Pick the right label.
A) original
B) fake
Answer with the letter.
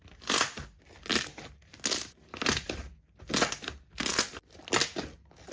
A